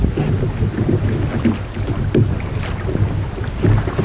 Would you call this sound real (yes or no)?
yes